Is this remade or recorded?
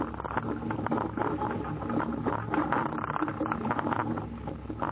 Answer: recorded